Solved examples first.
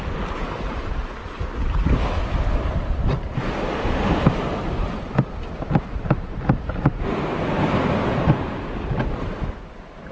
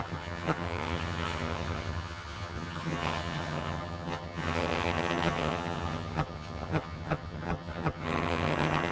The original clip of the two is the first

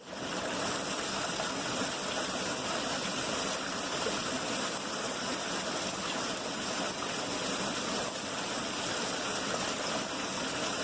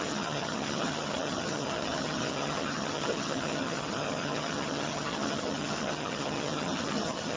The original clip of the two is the first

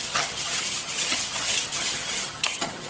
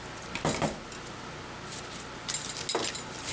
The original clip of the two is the second